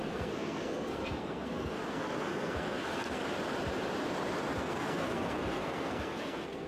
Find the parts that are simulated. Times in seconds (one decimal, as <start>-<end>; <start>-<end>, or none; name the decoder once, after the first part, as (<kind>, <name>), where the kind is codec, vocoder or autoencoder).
0.0-3.2 (codec, SNAC); 4.6-6.7